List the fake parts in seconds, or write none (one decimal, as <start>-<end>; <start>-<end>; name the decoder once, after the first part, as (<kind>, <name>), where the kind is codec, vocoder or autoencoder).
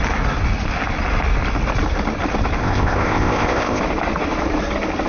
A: 2.6-3.8 (codec, ZipCodec)